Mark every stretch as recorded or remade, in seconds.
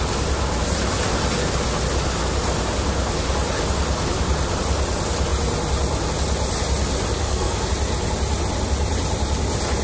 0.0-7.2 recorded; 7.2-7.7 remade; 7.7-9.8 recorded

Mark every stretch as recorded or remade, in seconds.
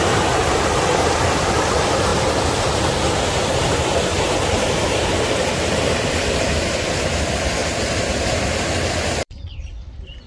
0.0-2.1 remade; 2.1-3.3 recorded; 3.3-7.6 remade; 7.6-8.3 recorded; 8.3-10.3 remade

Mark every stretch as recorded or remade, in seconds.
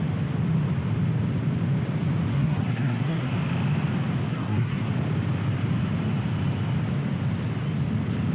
0.0-2.3 recorded; 2.3-3.3 remade; 3.3-4.3 recorded; 4.3-4.9 remade; 4.9-8.3 recorded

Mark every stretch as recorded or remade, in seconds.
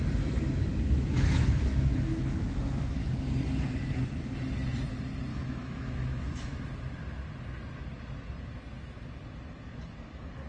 0.0-0.7 recorded; 0.7-3.1 remade; 3.1-5.3 recorded; 5.3-6.6 remade; 6.6-10.5 recorded